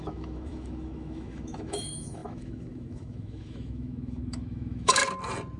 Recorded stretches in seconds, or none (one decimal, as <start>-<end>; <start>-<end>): 5.0-5.6